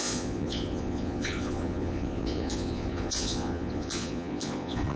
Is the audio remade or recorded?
remade